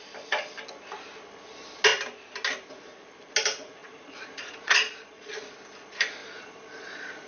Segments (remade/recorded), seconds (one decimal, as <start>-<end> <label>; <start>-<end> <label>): 0.0-3.8 recorded; 3.8-5.3 remade; 5.3-6.2 recorded; 6.2-7.3 remade